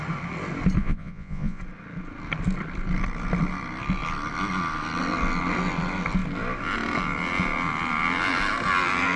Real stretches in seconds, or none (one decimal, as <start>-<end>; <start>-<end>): 0.0-0.8; 1.6-9.2